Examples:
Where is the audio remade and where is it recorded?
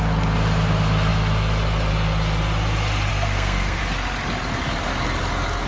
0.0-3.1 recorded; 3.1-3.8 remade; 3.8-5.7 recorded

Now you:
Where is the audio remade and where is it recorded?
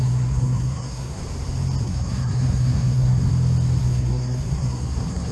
0.0-1.2 remade; 1.2-1.8 recorded; 1.8-3.3 remade; 3.3-3.8 recorded; 3.8-5.3 remade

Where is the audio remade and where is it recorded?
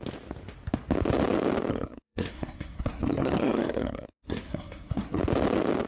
0.0-1.7 recorded; 1.7-5.2 remade; 5.2-5.9 recorded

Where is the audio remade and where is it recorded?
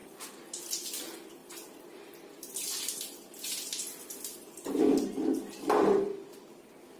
0.0-7.0 recorded